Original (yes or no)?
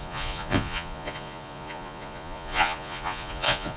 no